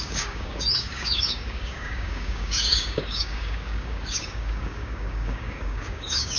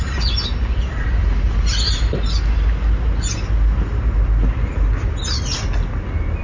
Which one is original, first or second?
second